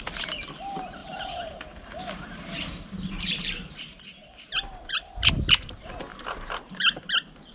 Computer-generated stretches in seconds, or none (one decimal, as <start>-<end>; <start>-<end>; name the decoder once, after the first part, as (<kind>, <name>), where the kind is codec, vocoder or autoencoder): 1.0-5.3 (vocoder, BigVGAN v2); 6.1-7.0